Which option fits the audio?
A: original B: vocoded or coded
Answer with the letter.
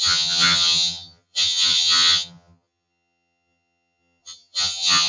B